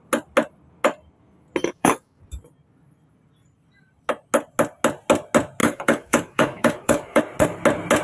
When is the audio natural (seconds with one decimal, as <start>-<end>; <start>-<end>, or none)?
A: 0.0-1.6; 2.2-5.6; 7.2-8.0